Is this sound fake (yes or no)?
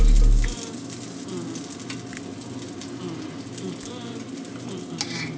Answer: no